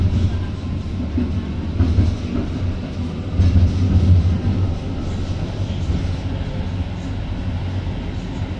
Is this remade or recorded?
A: recorded